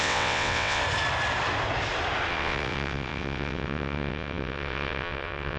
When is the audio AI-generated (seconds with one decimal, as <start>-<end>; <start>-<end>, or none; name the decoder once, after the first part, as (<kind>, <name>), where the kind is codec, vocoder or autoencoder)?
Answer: 0.0-0.8 (vocoder, WaveNeXt); 2.3-5.6